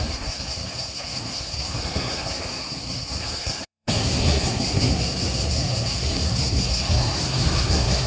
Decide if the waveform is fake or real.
fake